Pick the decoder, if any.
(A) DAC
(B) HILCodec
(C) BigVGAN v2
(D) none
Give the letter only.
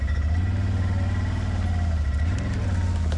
D